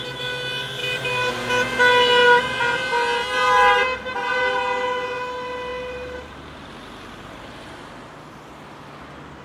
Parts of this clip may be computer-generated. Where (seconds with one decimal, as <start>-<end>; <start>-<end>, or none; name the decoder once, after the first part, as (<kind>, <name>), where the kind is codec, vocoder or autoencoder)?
0.8-1.3 (vocoder, BigVGAN v2); 5.7-7.9